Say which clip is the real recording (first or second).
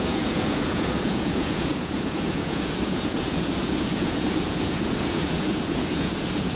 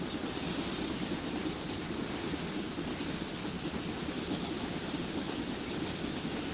second